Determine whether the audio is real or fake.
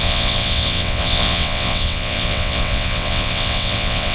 fake